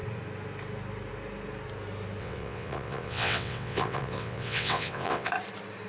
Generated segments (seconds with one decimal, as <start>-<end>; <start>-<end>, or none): 2.2-5.3